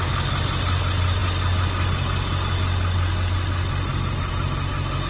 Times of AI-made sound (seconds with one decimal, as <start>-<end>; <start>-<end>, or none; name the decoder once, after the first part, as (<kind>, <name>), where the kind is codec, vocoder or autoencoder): none